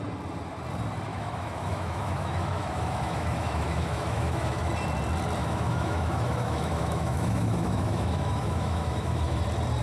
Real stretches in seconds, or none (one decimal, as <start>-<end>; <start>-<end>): 0.0-1.1; 4.7-5.4; 9.4-9.8